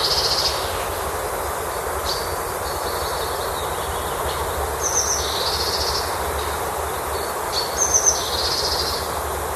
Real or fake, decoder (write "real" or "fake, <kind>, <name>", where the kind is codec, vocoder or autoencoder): real